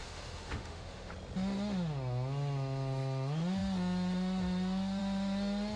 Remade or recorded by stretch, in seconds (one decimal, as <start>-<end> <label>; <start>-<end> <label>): 0.0-1.1 remade; 1.1-5.8 recorded